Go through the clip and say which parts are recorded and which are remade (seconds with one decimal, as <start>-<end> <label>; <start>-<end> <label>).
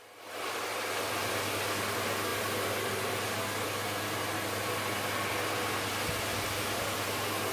0.0-7.5 recorded